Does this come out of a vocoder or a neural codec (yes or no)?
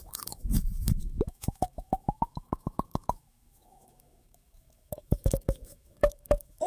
yes